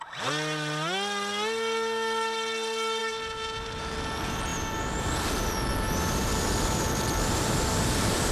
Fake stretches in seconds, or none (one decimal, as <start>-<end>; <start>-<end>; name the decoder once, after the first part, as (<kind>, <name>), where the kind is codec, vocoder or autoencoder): 3.0-3.8 (vocoder, BigVGAN v2)